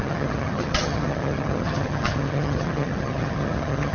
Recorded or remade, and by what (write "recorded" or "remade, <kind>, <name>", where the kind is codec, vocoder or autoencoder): remade, vocoder, HiFi-GAN